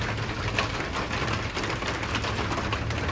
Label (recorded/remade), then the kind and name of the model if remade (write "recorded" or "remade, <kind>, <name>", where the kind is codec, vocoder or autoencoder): recorded